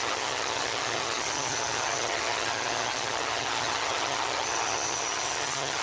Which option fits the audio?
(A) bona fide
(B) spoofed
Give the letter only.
B